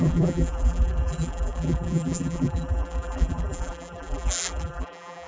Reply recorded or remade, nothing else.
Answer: remade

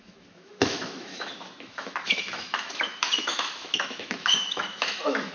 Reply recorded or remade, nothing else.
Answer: remade